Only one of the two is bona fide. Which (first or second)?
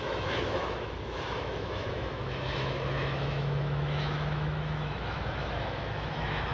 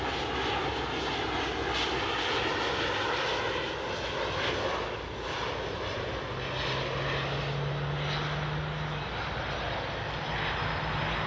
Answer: second